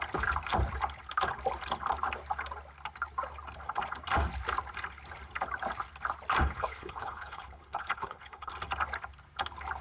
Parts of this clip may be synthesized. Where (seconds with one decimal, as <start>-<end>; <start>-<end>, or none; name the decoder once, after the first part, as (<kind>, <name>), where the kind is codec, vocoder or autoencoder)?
6.4-8.5 (codec, HILCodec)